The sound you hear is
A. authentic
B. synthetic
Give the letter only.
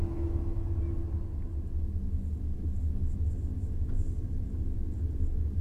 A